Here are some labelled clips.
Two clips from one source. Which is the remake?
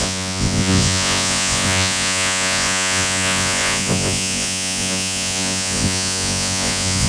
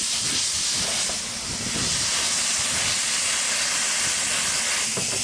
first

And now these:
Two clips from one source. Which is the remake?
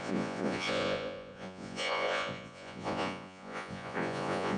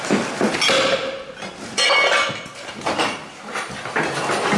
first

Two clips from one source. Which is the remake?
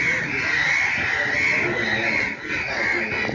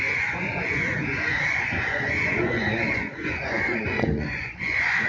second